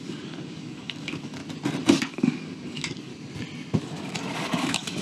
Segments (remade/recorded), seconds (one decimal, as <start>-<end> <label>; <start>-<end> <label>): 0.0-1.4 remade; 1.4-2.0 recorded; 2.0-3.1 remade; 3.1-3.8 recorded; 3.8-5.0 remade